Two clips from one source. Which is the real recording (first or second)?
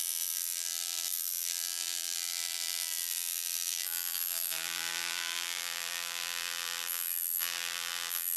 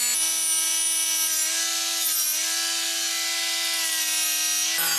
second